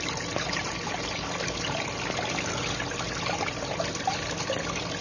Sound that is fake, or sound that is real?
real